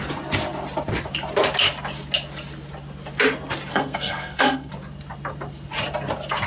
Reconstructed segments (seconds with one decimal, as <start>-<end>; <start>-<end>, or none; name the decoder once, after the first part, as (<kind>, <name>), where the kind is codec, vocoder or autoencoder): 3.7-4.7 (codec, SNAC)